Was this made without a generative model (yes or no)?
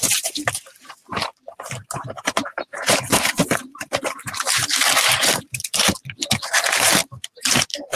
no